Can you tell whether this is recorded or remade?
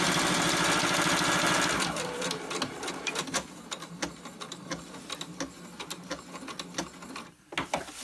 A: recorded